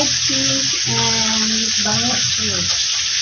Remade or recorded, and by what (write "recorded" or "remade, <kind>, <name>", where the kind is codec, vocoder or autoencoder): recorded